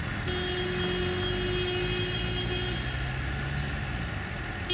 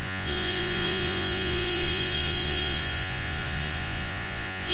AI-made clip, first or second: second